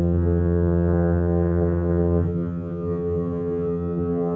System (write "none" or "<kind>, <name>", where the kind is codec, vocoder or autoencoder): vocoder, HiFi-GAN